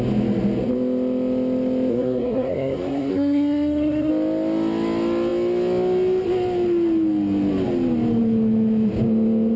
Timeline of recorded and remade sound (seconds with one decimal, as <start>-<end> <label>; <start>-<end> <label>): 0.0-1.9 recorded; 1.9-4.1 remade; 4.1-9.6 recorded